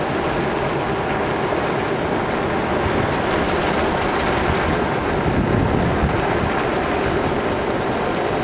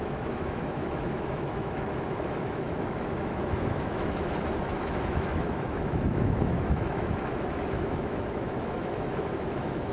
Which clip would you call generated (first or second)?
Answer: second